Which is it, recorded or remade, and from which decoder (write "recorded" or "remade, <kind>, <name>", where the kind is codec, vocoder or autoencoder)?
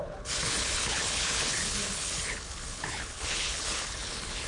remade, codec, HILCodec